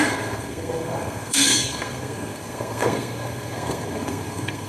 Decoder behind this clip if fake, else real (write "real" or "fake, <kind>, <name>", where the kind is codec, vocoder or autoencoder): fake, codec, SNAC